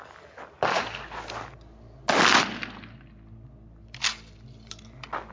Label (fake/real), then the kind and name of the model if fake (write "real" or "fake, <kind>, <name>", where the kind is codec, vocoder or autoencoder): real